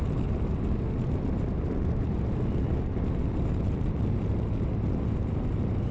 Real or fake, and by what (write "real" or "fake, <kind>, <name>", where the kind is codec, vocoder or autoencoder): real